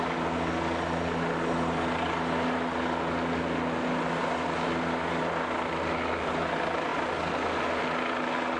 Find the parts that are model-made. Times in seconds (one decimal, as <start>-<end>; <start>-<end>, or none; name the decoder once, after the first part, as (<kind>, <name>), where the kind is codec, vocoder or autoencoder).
none